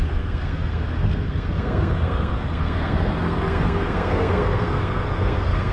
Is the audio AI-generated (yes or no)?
yes